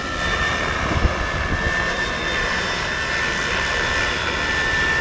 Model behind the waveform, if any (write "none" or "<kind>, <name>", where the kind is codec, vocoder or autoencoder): none